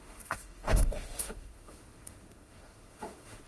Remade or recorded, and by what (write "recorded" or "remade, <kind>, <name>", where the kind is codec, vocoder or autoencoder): remade, autoencoder, DAC-VAE